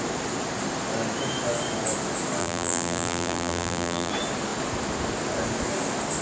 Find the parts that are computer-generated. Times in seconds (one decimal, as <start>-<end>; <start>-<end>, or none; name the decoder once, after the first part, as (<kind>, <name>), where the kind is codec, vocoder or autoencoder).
2.4-4.1 (vocoder, BigVGAN v2)